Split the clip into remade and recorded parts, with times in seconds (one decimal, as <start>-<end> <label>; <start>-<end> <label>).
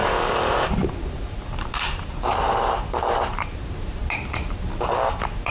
0.0-4.0 remade; 4.0-4.9 recorded; 4.9-5.5 remade